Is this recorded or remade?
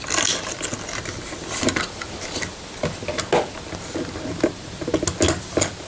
recorded